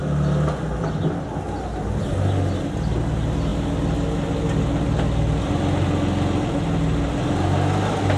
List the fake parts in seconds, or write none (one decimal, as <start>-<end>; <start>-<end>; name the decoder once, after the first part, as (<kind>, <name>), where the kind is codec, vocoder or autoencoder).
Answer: none